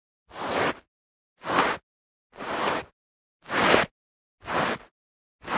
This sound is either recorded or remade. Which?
recorded